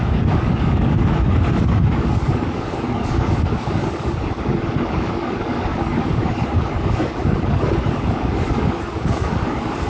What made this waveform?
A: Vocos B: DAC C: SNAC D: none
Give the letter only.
B